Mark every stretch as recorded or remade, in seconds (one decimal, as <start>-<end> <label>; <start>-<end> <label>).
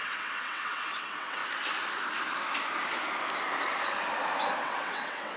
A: 0.0-1.4 remade; 1.4-4.6 recorded; 4.6-5.4 remade